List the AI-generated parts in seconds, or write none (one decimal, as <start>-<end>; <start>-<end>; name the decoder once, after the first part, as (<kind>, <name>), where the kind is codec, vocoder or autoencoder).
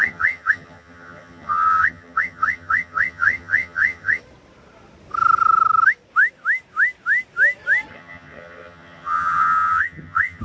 0.0-4.2 (vocoder, HiFi-GAN); 7.9-10.4